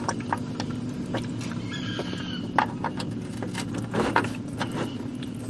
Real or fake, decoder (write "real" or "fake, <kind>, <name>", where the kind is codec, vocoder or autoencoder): real